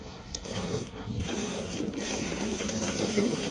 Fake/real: fake